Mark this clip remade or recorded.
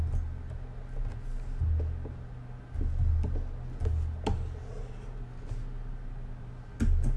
recorded